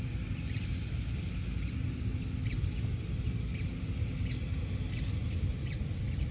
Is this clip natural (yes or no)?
yes